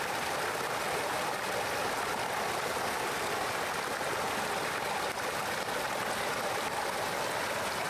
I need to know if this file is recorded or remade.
recorded